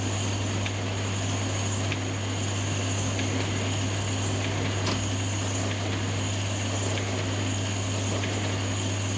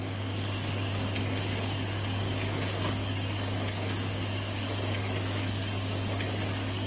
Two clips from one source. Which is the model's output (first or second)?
second